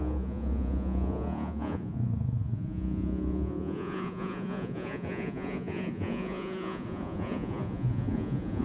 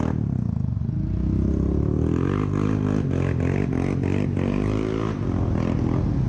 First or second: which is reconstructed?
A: first